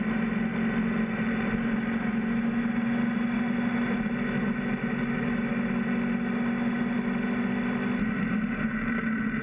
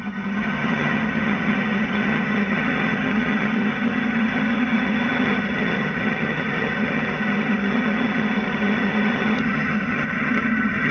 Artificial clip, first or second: second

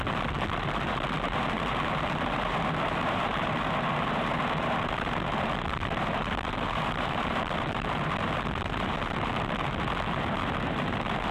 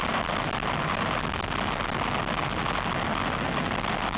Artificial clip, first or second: first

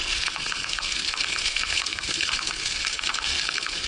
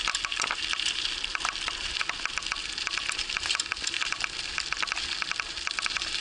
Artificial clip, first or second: first